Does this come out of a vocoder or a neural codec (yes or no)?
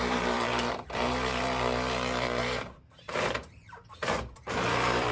yes